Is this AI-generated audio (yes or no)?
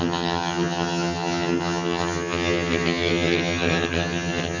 yes